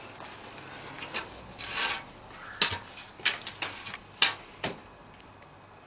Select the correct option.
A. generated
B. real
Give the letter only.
B